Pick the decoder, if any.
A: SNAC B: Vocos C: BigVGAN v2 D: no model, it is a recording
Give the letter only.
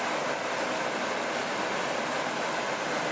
D